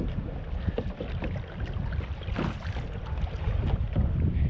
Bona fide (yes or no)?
yes